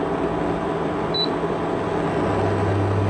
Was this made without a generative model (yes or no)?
yes